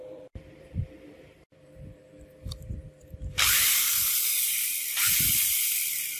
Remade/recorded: remade